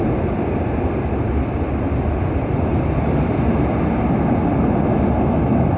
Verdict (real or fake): real